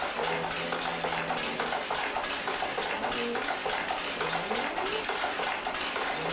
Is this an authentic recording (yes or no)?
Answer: yes